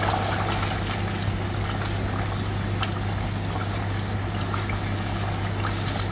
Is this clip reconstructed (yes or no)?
no